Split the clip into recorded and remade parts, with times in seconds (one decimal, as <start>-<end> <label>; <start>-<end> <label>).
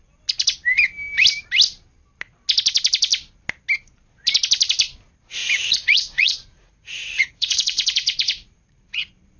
0.0-5.4 recorded; 5.4-9.0 remade; 9.0-9.4 recorded